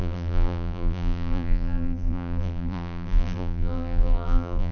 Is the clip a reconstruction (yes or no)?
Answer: yes